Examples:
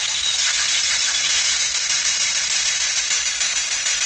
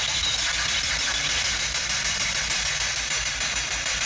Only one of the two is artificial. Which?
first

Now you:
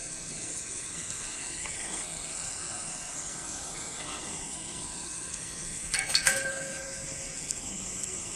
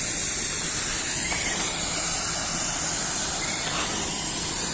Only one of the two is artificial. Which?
first